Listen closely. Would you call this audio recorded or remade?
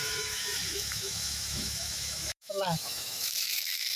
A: remade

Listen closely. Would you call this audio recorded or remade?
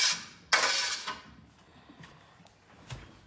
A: recorded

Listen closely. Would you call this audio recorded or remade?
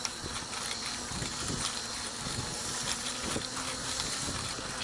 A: recorded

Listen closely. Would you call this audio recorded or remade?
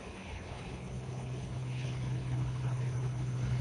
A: remade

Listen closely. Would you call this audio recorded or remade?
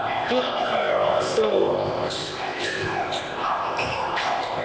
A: remade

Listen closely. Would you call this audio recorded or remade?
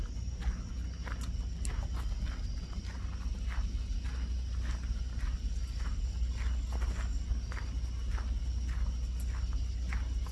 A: recorded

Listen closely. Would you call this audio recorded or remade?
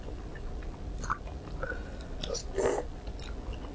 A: recorded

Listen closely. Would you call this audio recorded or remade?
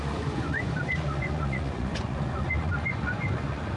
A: remade